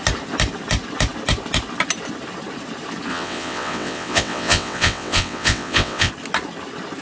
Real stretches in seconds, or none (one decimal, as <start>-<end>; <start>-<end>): 0.0-3.1; 6.1-7.0